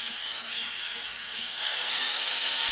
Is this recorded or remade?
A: remade